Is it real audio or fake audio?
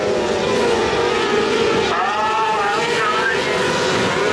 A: fake